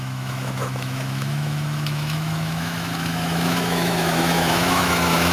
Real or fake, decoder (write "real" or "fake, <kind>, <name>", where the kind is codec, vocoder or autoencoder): fake, autoencoder, DAC-VAE